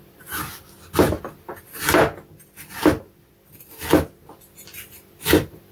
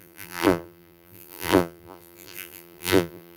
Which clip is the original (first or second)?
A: first